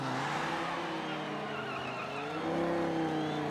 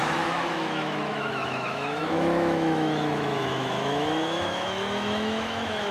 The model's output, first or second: second